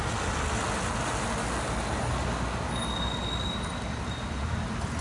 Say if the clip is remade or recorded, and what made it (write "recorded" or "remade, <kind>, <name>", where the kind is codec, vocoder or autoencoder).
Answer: recorded